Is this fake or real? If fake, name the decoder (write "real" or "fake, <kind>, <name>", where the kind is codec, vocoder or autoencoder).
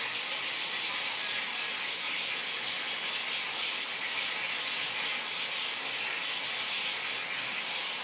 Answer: real